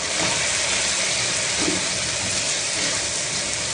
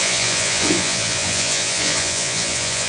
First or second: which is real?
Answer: first